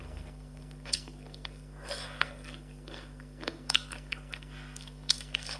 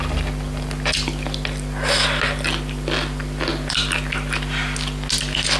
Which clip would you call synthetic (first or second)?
first